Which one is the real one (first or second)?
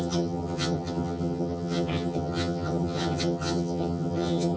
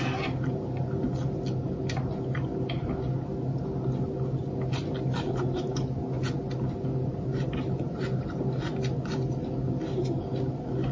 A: second